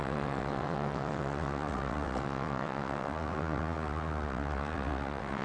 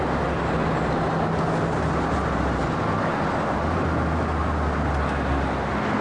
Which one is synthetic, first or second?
first